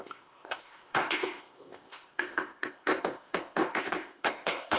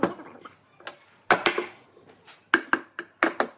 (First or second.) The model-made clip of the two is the first